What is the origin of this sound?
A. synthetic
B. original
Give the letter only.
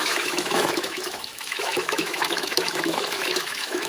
A